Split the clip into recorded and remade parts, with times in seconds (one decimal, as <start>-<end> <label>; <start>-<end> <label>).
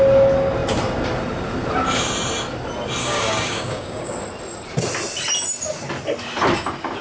0.0-3.0 recorded; 3.0-4.2 remade; 4.2-7.0 recorded